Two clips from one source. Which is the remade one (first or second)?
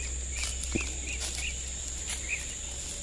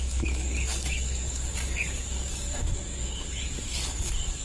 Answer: second